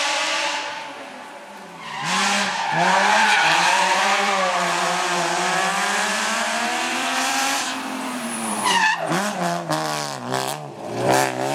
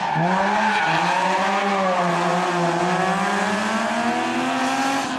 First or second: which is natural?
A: second